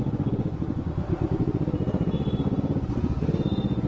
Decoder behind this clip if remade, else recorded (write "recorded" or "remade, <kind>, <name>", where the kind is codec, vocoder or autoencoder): remade, vocoder, Vocos